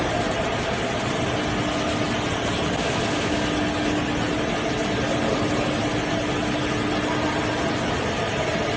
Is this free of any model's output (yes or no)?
yes